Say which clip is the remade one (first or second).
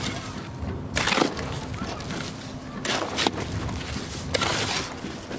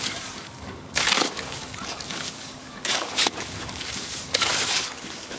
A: second